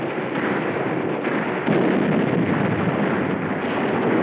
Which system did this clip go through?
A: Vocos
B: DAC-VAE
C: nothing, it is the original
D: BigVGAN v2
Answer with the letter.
C